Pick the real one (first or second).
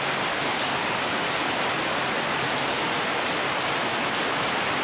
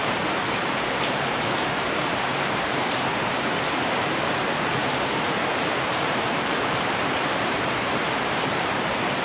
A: first